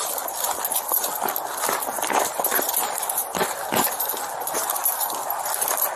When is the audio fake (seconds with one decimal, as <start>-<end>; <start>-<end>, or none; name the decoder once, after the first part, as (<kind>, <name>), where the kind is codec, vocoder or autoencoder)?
none